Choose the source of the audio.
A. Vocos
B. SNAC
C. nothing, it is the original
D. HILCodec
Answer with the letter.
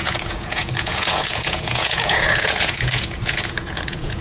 A